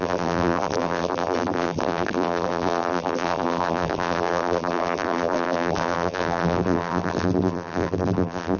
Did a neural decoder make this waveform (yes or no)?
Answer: yes